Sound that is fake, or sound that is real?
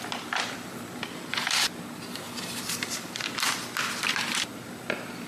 real